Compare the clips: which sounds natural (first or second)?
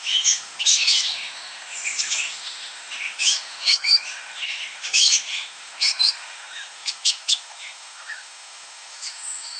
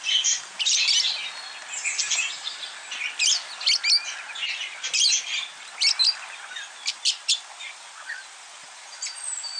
second